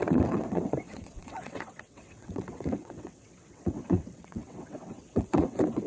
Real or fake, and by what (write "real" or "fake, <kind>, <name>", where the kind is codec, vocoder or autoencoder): fake, vocoder, WaveNeXt